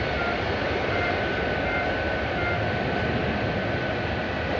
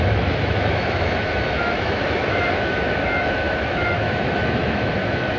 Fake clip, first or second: second